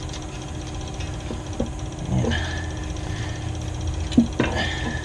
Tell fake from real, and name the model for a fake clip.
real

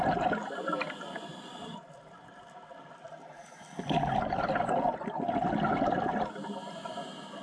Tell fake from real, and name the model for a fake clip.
real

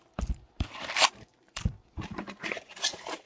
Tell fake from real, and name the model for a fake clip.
fake, vocoder, BigVGAN v2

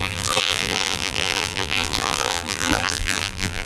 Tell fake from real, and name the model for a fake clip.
fake, vocoder, BigVGAN v2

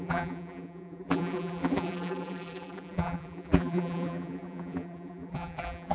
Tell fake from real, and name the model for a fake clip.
fake, vocoder, BigVGAN v2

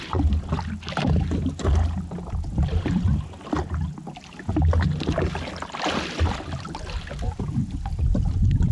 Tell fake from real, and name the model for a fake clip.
real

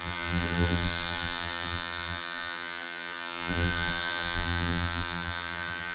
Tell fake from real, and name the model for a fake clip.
fake, vocoder, BigVGAN v2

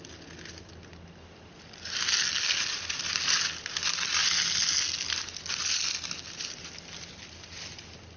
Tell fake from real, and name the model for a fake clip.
real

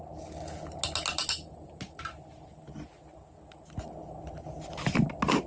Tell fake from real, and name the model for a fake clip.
real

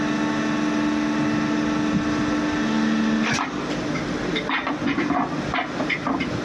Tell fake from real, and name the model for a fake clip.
real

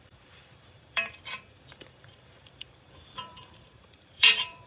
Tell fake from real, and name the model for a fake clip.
fake, vocoder, BigVGAN v2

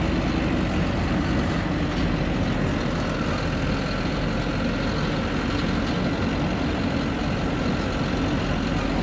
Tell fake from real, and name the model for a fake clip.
real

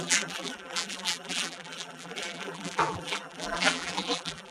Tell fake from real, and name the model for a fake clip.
fake, vocoder, BigVGAN v2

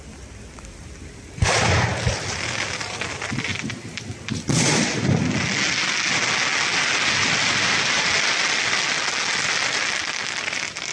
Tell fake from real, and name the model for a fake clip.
real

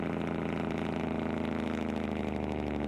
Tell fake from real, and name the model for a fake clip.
real